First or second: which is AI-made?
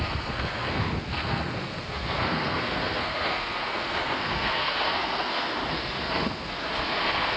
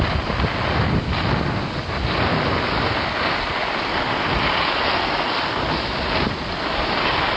first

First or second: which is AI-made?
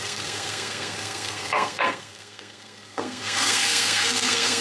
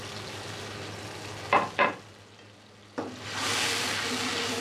first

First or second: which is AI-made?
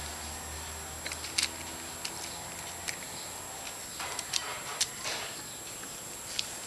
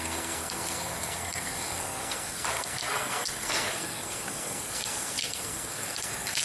second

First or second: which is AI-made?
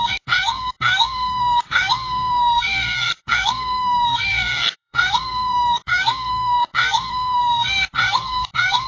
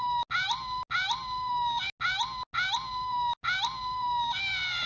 first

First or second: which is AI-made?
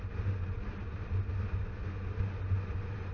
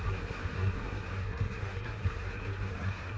second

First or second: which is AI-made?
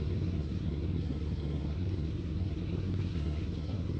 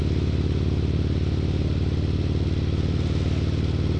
first